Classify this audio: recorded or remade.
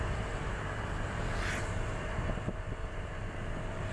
remade